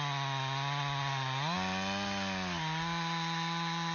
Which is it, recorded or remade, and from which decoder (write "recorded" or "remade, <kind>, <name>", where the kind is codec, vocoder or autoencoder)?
recorded